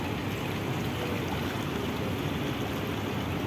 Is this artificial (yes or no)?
no